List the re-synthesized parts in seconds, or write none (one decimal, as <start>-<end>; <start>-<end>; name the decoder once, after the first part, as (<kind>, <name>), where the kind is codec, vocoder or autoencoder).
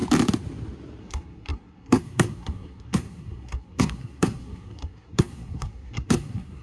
1.0-6.6 (codec, SNAC)